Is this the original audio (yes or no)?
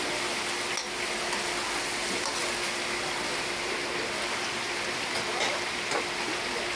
yes